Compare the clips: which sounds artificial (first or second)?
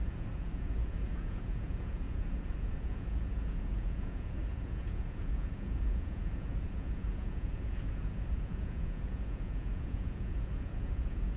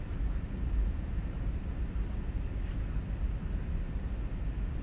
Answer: first